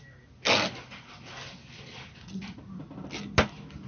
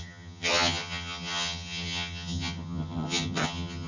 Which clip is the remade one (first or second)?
second